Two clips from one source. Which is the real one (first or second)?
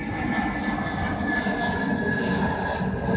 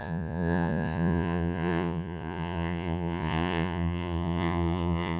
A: first